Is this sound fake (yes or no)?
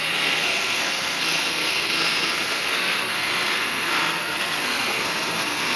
yes